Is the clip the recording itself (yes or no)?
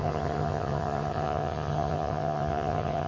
no